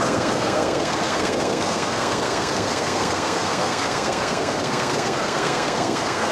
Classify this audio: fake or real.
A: fake